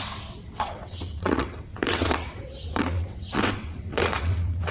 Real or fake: fake